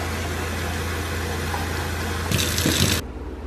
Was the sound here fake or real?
real